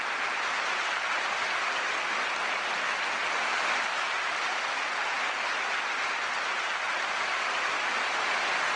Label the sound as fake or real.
real